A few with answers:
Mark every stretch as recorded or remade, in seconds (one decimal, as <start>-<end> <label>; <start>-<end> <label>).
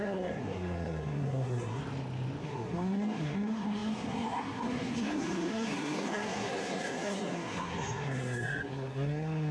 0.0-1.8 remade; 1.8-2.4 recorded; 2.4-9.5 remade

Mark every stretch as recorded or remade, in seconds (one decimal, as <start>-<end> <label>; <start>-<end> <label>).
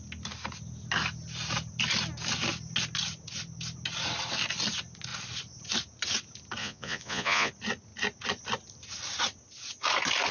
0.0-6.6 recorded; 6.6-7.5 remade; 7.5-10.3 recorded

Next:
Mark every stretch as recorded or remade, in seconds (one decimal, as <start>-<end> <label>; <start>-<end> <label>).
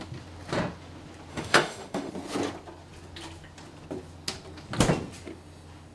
0.0-1.3 recorded; 1.3-2.1 remade; 2.1-5.9 recorded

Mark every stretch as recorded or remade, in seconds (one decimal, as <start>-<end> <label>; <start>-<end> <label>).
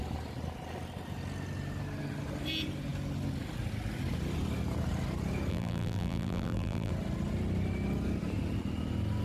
0.0-5.5 recorded; 5.5-6.9 remade; 6.9-9.2 recorded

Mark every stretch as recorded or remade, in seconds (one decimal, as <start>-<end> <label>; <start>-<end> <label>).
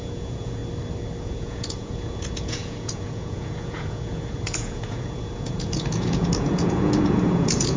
0.0-0.6 remade; 0.6-1.2 recorded; 1.2-7.8 remade